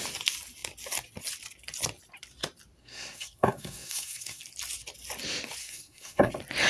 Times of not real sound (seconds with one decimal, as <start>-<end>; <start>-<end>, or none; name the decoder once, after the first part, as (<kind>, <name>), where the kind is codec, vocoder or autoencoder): 2.8-4.4 (codec, SNAC); 5.6-6.3

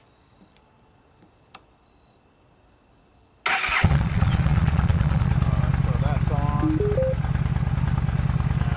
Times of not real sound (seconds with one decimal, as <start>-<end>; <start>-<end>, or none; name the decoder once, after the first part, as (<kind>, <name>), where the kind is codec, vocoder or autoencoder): 3.8-5.3 (vocoder, Vocos)

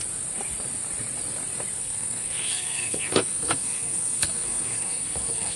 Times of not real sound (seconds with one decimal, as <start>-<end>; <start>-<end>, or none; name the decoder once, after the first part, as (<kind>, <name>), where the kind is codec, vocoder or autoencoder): 1.8-5.6 (codec, SNAC)

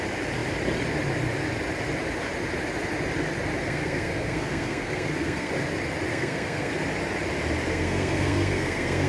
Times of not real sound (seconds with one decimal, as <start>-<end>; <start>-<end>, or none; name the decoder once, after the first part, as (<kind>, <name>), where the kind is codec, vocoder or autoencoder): 3.6-5.5 (codec, SNAC); 6.1-6.7; 7.7-9.1